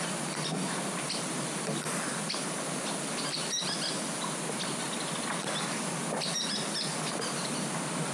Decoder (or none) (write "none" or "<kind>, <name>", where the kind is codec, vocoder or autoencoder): none